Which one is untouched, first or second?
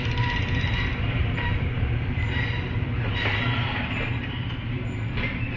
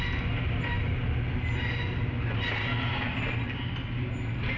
second